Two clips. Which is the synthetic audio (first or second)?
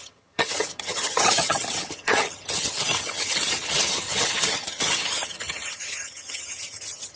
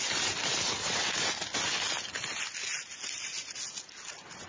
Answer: first